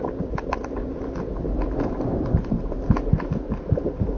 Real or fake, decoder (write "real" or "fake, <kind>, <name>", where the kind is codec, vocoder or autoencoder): real